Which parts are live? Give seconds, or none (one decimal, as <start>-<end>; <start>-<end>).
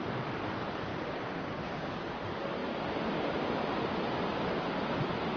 0.0-0.9; 2.1-5.4